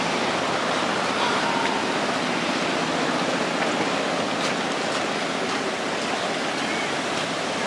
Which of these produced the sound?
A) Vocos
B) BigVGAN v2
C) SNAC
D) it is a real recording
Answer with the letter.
D